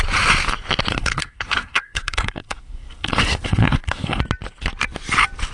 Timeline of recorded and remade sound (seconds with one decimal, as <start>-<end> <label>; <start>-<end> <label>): 0.0-0.9 recorded; 0.9-4.2 remade; 4.2-5.5 recorded